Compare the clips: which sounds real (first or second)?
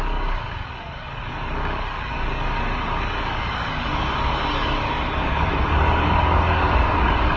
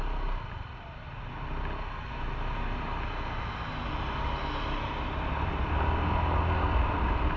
second